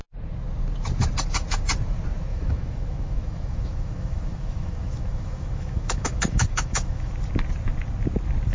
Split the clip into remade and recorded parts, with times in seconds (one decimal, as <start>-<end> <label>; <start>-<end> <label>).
0.0-2.3 recorded; 2.3-7.1 remade; 7.1-8.5 recorded